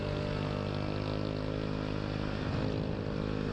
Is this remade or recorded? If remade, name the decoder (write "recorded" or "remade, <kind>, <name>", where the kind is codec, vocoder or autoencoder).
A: recorded